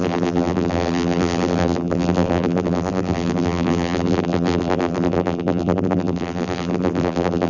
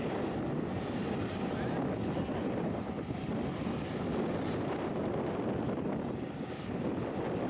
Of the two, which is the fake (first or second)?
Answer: first